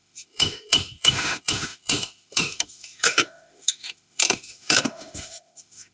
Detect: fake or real fake